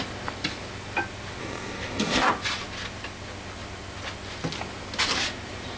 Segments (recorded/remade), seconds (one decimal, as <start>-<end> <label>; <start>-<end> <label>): 0.0-1.4 recorded; 1.4-2.3 remade; 2.3-5.8 recorded